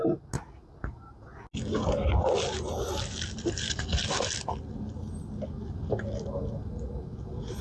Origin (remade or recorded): recorded